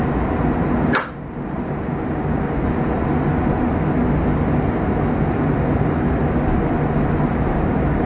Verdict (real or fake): real